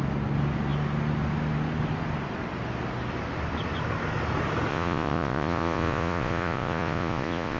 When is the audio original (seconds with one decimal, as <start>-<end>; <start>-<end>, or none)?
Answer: 0.0-4.7